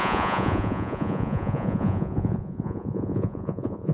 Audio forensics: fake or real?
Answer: fake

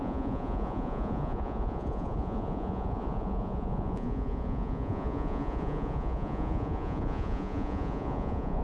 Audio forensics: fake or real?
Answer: fake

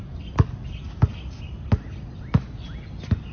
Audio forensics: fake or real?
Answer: real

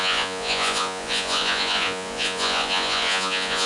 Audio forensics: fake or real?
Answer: fake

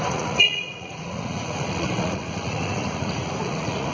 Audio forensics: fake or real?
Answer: fake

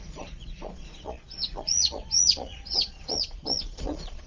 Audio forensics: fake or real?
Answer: fake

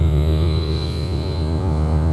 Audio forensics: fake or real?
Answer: fake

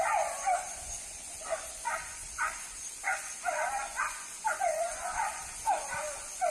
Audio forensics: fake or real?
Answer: fake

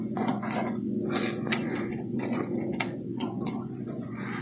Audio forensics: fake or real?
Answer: fake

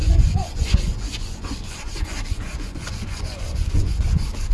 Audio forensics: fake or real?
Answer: fake